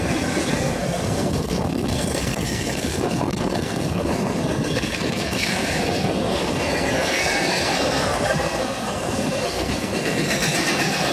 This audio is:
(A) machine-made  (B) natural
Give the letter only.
A